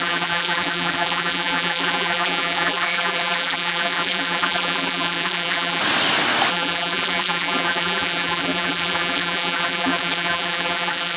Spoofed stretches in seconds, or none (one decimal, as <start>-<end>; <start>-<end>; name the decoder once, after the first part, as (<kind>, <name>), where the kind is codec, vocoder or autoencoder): 0.0-5.8 (vocoder, BigVGAN v2); 6.5-11.2